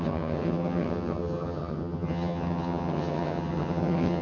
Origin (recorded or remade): remade